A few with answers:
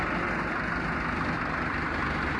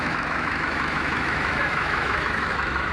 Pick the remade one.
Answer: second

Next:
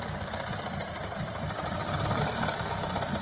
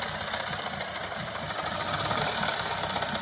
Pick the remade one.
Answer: first